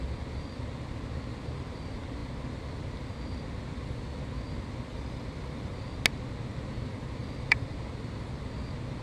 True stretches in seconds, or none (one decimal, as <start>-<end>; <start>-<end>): 0.0-4.9; 5.7-7.2; 7.7-9.0